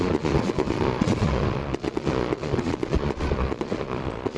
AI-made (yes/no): yes